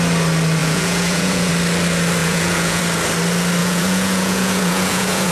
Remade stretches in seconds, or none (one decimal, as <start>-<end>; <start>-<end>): 0.6-1.5; 2.2-2.8; 3.6-5.3